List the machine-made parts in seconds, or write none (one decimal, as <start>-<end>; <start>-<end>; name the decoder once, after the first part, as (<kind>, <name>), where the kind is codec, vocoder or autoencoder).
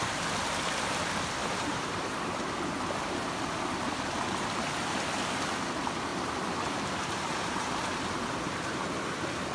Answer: 1.4-2.5 (vocoder, BigVGAN v2); 6.1-7.7